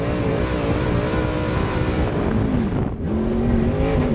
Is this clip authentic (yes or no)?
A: yes